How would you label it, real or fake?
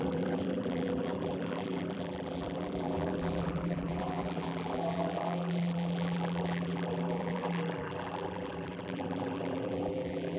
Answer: fake